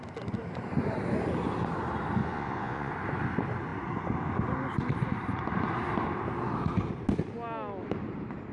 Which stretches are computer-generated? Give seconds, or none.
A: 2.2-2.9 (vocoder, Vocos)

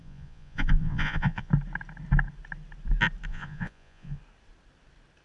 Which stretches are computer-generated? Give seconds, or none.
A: 0.0-1.5 (vocoder, Vocos); 3.3-4.2